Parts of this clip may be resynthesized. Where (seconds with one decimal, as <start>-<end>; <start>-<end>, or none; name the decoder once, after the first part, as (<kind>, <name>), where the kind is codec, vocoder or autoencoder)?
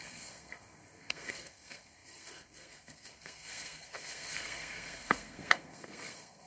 0.0-6.5 (codec, SNAC)